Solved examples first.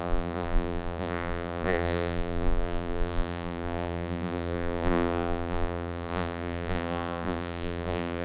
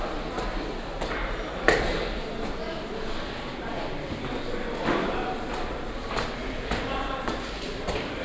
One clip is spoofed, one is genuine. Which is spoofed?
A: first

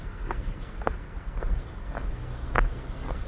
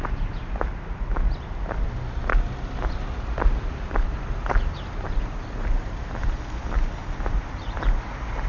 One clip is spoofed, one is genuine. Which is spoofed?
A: first